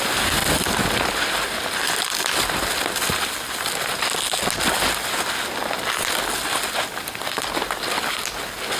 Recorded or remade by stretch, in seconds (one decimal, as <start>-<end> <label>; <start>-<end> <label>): 0.0-8.8 recorded